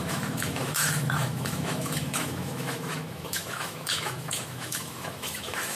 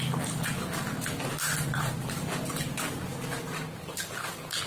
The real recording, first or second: second